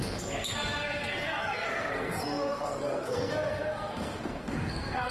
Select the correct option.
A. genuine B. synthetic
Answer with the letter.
B